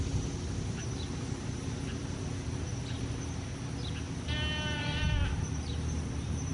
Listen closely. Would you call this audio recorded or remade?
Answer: recorded